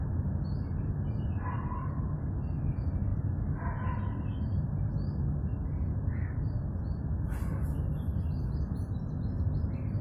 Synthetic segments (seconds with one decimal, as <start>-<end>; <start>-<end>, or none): 3.1-4.9